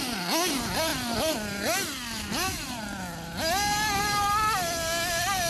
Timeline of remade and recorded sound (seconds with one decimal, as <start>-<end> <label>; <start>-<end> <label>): 0.0-5.5 recorded